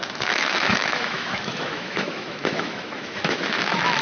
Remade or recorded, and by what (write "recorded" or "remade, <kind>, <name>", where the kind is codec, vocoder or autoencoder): remade, autoencoder, DAC-VAE